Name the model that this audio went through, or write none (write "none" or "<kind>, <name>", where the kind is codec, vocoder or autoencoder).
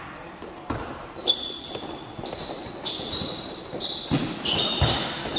none